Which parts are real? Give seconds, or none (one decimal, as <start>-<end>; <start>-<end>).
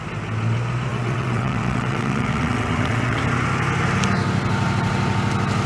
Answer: 0.0-0.9; 3.2-5.7